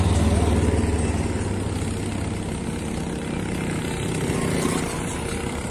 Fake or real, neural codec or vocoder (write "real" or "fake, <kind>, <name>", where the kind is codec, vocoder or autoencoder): real